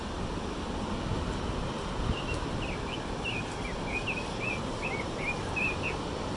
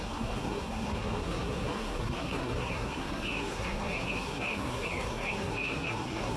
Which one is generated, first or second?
second